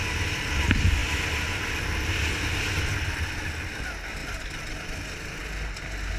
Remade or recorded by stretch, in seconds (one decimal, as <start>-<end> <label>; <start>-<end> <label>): 0.0-6.2 recorded